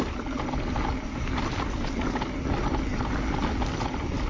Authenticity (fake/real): real